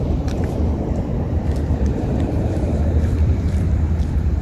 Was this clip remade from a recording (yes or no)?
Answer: yes